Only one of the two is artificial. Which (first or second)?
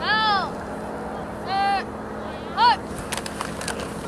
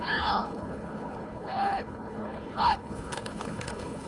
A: second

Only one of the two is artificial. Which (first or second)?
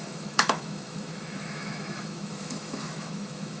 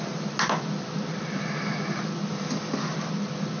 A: first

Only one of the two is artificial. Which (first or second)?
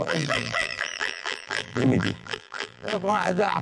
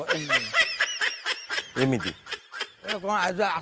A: first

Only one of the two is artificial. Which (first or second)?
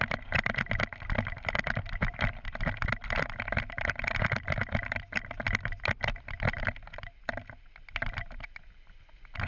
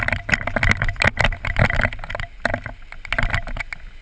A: first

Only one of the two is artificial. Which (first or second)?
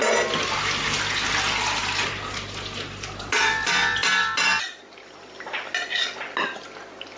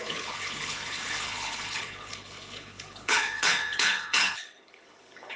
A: second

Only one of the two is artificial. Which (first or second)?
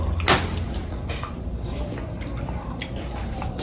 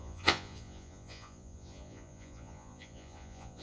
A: second